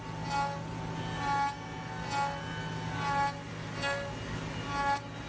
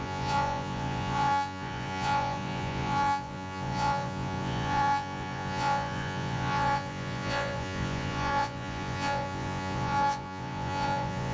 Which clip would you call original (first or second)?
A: first